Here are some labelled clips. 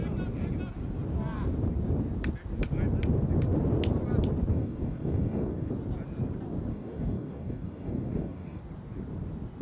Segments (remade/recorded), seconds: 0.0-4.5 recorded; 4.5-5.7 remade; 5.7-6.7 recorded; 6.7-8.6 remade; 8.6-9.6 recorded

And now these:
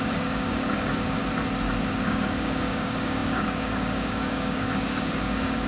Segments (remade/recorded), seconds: 0.0-1.2 remade; 1.2-1.9 recorded; 1.9-5.7 remade